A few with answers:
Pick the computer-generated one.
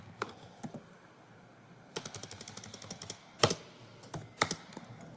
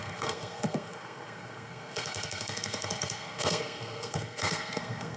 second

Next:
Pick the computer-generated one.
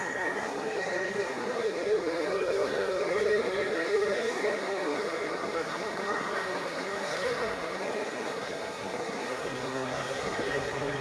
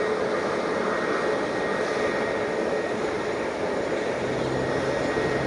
first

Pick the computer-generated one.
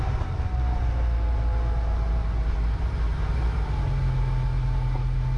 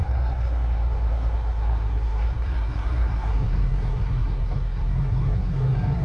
second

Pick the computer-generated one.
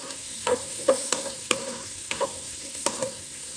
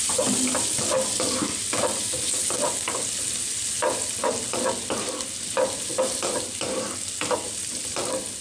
first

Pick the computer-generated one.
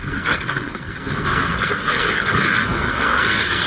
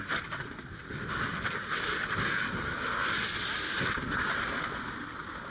first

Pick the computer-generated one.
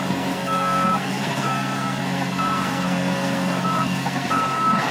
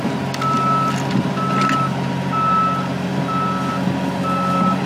first